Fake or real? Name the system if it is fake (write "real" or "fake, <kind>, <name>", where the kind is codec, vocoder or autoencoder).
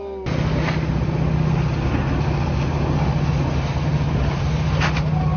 real